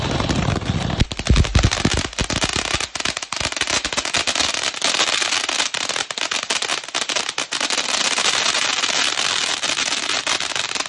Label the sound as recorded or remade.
recorded